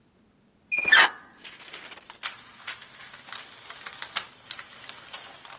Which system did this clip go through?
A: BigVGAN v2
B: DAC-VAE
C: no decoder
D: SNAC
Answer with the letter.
C